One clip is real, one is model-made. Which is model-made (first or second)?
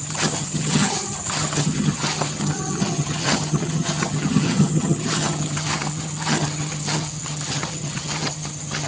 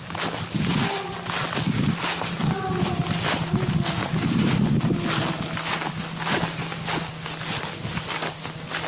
first